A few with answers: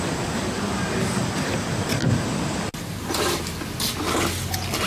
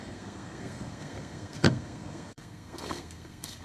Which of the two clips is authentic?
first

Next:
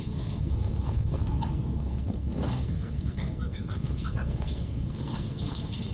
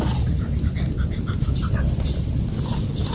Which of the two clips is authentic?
second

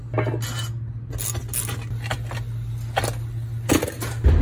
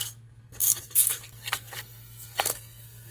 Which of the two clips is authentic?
first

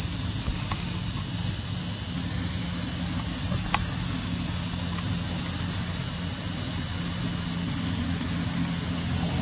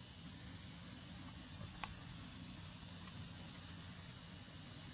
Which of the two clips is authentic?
first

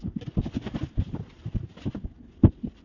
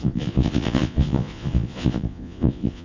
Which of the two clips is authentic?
first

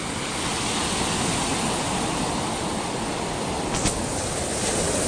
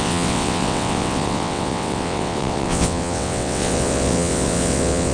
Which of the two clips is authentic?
first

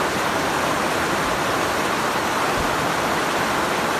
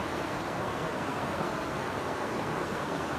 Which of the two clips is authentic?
first